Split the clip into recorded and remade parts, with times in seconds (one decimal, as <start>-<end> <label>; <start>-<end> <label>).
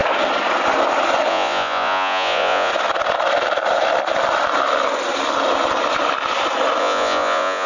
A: 0.0-1.3 recorded; 1.3-2.7 remade; 2.7-6.8 recorded; 6.8-7.7 remade